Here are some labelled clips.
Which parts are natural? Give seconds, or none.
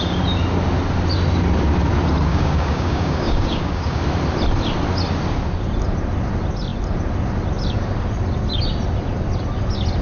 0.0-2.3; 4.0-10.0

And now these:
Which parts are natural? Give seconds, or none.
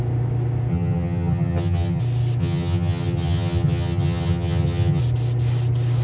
0.0-0.7; 2.0-2.4; 5.0-6.0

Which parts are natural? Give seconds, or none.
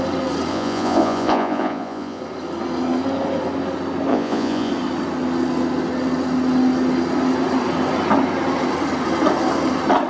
0.0-0.5; 2.2-4.1; 4.7-10.1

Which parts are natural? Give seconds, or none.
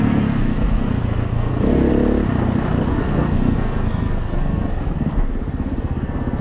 1.9-2.9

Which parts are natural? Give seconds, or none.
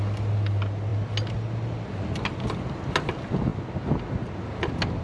0.0-5.0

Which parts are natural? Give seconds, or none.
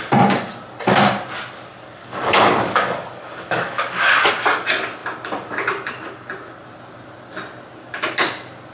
0.0-2.0; 4.3-8.7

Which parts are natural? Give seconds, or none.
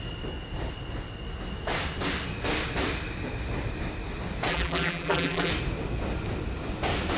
0.0-4.5; 5.5-7.2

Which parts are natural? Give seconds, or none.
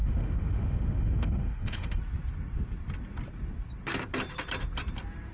2.0-5.3